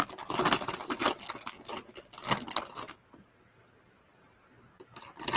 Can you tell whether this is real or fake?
real